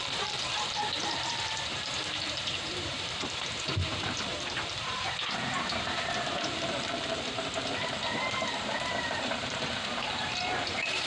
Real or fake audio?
fake